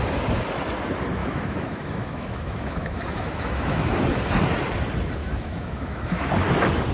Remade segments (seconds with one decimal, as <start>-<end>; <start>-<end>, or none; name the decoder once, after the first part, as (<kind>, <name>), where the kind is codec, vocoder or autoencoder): 1.2-4.0 (autoencoder, DAC-VAE); 5.2-6.3